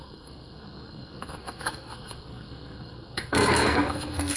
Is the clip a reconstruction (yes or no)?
yes